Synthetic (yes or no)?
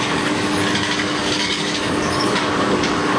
yes